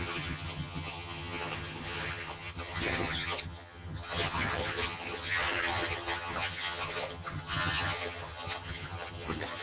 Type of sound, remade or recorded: remade